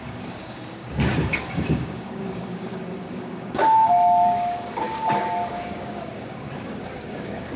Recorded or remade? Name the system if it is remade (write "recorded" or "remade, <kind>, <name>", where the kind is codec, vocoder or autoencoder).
remade, codec, DAC